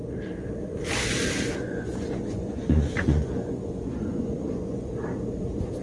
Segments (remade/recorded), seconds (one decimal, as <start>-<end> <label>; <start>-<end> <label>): 0.0-1.5 recorded; 1.5-4.9 remade; 4.9-5.8 recorded